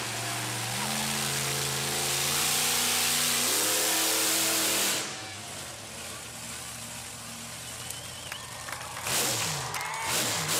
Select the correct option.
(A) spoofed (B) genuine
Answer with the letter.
B